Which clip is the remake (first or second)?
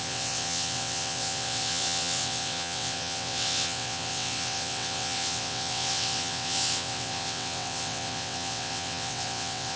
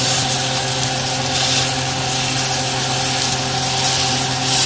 first